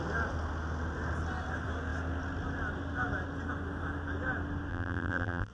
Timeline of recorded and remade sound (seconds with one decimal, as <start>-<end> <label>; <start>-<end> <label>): 0.0-4.7 recorded; 4.7-5.5 remade